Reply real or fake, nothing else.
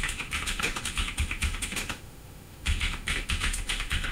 fake